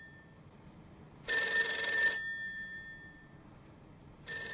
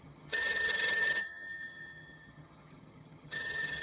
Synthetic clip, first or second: second